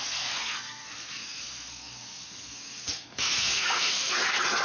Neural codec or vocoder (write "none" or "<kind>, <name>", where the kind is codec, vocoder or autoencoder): codec, SNAC